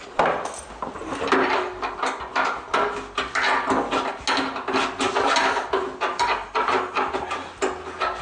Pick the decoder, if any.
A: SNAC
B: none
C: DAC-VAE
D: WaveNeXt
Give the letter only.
B